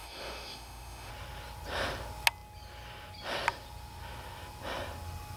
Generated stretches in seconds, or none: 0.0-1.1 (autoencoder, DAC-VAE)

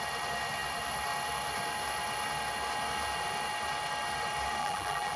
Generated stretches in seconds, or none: 4.6-5.2 (vocoder, BigVGAN v2)

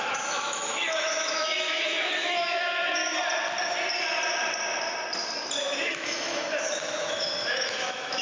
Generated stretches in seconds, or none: 0.0-3.0 (autoencoder, DAC-VAE); 5.6-8.2